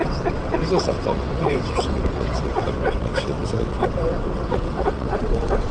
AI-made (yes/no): yes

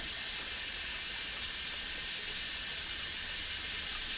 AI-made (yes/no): no